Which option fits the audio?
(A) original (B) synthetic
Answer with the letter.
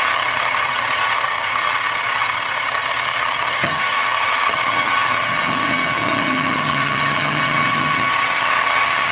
B